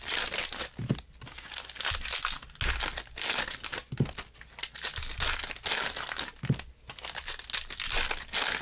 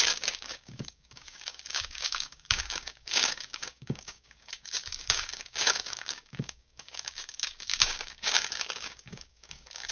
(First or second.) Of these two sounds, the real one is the first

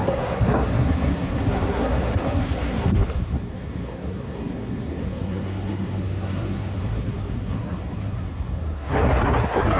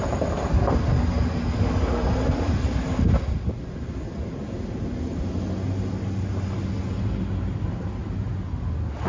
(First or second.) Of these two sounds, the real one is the second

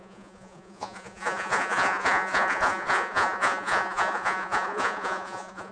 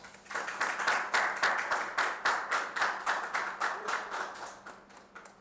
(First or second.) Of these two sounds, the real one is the second